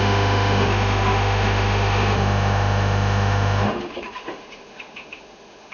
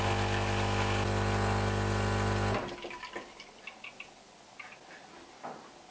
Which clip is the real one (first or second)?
second